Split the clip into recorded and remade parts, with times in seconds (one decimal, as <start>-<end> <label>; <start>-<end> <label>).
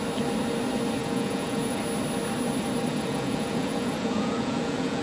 0.0-1.0 recorded; 1.0-1.8 remade; 1.8-2.9 recorded; 2.9-5.0 remade